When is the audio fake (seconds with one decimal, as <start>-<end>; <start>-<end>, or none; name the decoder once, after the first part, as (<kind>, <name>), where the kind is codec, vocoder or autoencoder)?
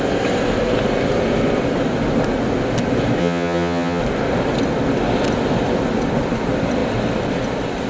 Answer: 3.2-4.0 (vocoder, HiFi-GAN)